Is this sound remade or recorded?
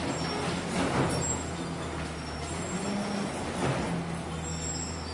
recorded